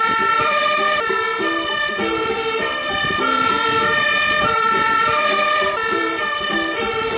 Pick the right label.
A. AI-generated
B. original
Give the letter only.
A